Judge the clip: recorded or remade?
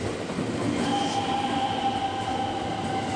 recorded